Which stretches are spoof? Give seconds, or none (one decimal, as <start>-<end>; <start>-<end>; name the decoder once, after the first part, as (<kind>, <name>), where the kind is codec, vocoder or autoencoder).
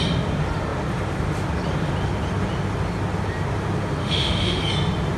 4.0-4.6 (autoencoder, DAC-VAE)